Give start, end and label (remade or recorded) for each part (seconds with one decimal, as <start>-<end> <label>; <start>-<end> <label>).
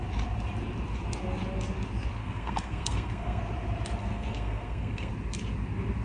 0.0-2.2 recorded; 2.2-3.4 remade; 3.4-4.0 recorded; 4.0-5.1 remade; 5.1-6.0 recorded